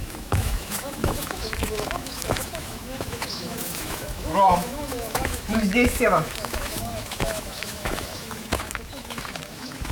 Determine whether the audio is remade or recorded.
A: remade